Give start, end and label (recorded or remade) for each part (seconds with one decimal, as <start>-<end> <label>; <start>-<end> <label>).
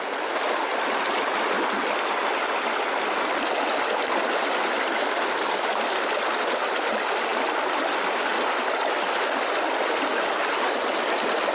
0.0-11.5 recorded